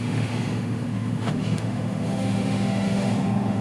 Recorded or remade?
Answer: remade